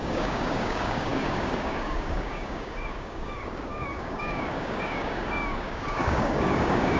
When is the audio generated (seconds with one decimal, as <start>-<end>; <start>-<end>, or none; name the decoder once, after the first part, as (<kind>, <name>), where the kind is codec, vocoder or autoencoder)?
0.0-7.0 (codec, DAC)